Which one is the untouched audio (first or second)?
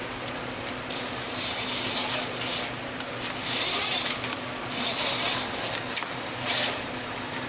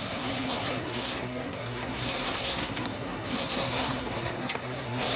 first